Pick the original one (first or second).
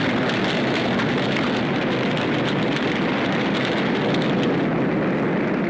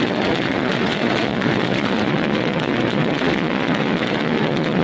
first